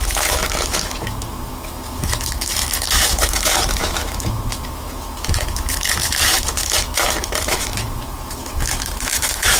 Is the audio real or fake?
fake